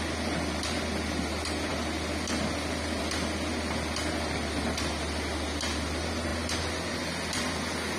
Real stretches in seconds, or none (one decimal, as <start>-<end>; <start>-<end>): 0.0-8.0

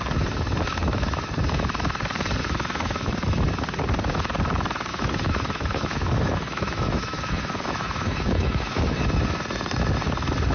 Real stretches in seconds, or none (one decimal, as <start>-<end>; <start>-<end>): 0.0-2.4; 3.1-4.9; 9.0-10.5

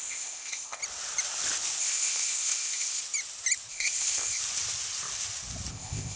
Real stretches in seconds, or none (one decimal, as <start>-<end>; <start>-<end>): 0.8-1.8; 3.0-3.7; 4.4-5.7

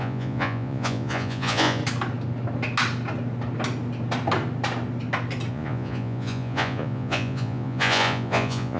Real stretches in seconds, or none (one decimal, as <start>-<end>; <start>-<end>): 1.8-5.5